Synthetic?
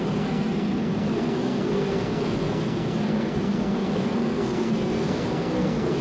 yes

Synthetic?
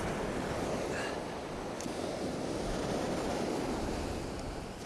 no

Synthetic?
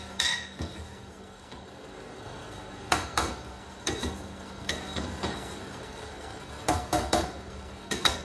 yes